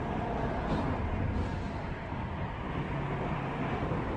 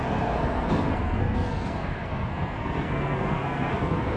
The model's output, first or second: second